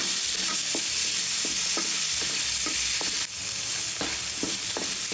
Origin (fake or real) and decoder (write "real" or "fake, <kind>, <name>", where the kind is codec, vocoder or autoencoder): real